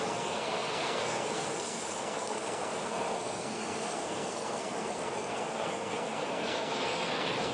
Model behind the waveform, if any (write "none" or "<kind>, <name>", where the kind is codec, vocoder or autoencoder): codec, SNAC